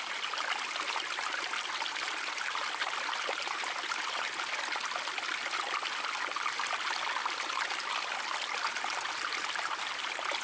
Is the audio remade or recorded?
recorded